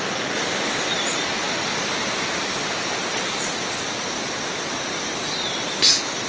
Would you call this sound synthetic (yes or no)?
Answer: no